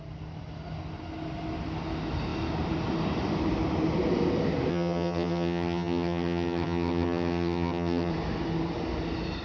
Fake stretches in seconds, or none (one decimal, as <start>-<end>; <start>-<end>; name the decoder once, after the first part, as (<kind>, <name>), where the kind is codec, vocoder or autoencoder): 4.7-8.1 (vocoder, HiFi-GAN)